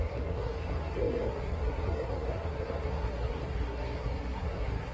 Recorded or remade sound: remade